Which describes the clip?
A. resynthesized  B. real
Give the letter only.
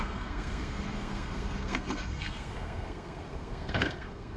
A